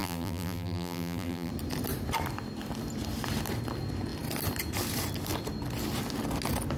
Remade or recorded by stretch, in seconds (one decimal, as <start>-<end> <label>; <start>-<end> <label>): 0.0-1.5 remade; 1.5-6.8 recorded